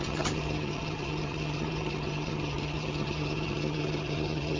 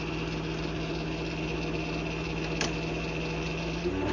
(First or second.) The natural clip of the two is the second